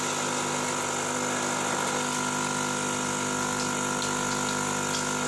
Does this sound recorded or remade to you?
recorded